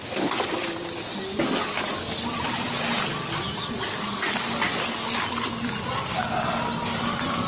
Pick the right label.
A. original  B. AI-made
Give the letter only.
A